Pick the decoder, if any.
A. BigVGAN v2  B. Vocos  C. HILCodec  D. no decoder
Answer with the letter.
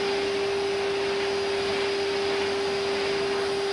D